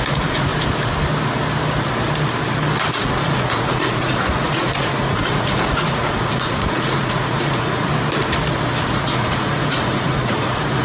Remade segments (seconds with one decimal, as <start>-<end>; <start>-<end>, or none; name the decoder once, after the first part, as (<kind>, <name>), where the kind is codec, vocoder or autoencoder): 0.0-0.5 (vocoder, Vocos); 2.9-7.9; 8.8-10.8